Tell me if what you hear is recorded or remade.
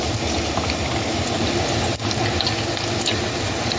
recorded